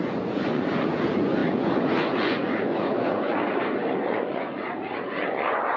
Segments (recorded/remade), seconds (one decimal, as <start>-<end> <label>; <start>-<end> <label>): 0.0-5.8 remade